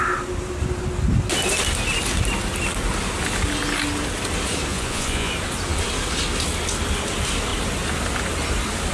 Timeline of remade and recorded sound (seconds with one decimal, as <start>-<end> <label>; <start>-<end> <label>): 0.0-4.7 recorded; 4.7-5.3 remade; 5.3-8.9 recorded